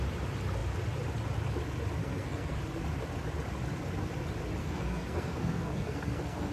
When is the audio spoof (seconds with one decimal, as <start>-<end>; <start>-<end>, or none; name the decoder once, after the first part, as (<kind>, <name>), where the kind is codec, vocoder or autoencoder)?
2.0-2.6 (codec, SNAC); 4.6-6.5